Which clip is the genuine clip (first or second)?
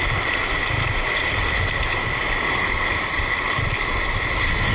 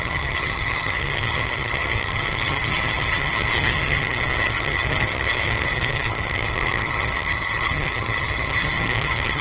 first